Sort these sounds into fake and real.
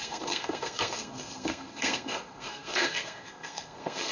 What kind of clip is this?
fake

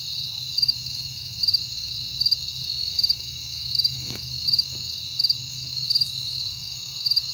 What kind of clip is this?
fake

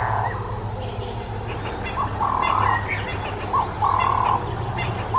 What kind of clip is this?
real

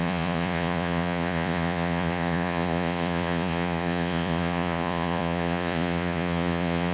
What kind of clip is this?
fake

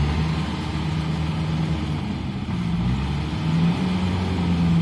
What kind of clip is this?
real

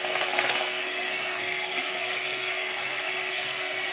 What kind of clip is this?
fake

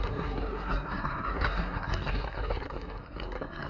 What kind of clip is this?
fake